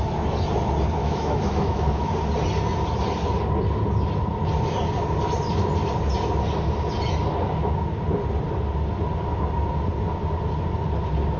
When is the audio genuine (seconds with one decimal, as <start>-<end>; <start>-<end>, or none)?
0.0-1.0; 2.1-11.4